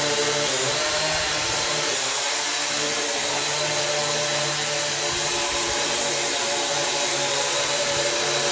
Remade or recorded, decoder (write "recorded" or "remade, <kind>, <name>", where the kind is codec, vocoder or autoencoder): remade, vocoder, BigVGAN v2